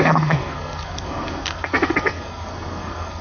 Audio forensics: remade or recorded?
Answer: remade